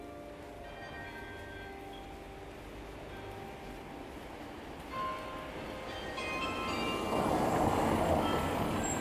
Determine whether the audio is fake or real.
real